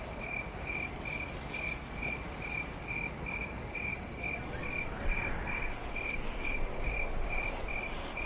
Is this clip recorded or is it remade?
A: recorded